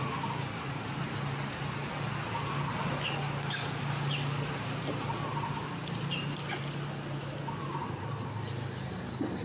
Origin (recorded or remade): recorded